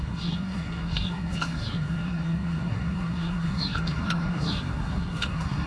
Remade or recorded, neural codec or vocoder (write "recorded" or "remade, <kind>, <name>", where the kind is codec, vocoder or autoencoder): remade, codec, SNAC